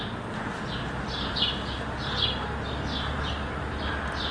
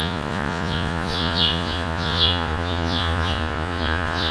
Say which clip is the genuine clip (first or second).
first